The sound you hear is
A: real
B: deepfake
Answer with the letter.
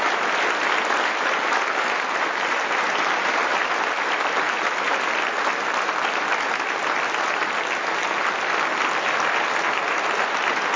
A